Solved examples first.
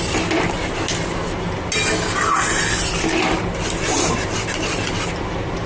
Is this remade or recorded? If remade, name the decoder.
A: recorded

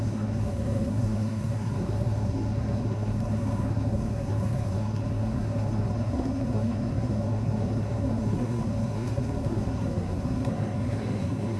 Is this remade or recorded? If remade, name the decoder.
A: remade, codec, SNAC